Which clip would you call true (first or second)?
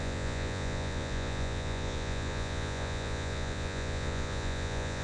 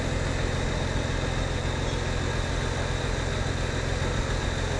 second